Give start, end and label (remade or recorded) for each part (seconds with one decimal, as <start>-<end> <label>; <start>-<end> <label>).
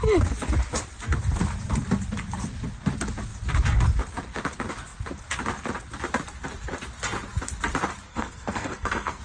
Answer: 0.0-8.1 recorded; 8.1-9.2 remade